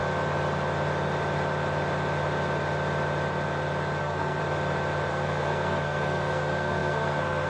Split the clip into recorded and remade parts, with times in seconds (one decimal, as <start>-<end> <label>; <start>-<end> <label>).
0.0-4.0 recorded; 4.0-4.4 remade; 4.4-5.1 recorded; 5.1-7.5 remade